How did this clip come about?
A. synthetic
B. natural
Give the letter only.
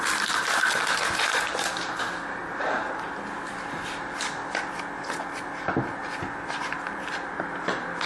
B